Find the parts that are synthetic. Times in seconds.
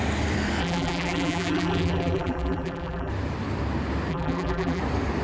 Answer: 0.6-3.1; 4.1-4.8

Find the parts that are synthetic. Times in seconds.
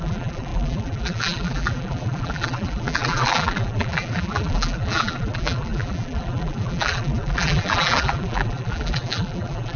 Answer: 0.0-9.8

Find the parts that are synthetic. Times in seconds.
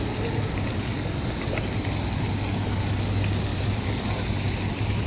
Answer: 3.5-5.1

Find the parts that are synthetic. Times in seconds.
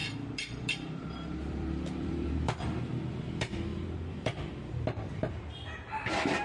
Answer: 0.0-2.3; 3.7-5.3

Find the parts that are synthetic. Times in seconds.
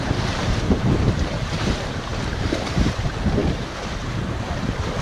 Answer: 0.0-3.4; 4.0-5.0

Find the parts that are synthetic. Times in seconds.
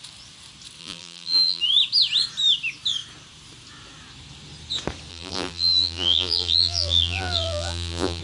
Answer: 0.8-1.6; 5.1-8.2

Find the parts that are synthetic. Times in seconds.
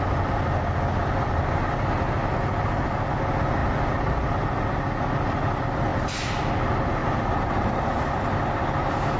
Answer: 7.0-8.3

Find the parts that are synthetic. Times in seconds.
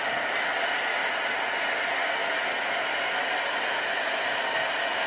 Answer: none